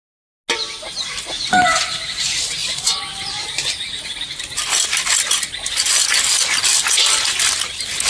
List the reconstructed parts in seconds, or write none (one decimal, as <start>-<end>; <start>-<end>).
none